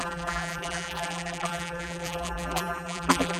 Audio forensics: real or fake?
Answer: fake